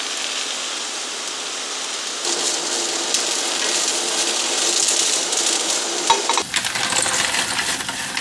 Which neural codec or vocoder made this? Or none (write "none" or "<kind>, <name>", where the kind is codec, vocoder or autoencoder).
none